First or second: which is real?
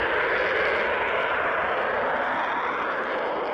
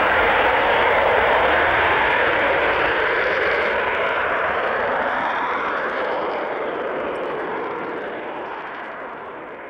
first